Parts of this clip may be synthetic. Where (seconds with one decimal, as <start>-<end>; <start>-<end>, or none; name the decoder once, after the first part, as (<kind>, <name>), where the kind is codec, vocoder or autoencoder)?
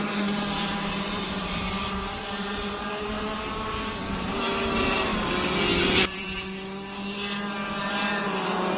0.0-3.3 (vocoder, BigVGAN v2); 4.2-5.1; 7.8-8.8